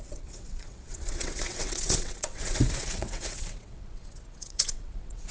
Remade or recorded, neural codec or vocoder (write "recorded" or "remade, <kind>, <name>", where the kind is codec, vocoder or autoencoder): remade, vocoder, WaveNeXt